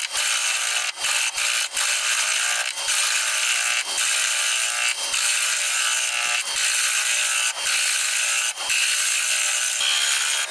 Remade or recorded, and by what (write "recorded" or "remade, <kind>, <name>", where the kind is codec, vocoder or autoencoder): recorded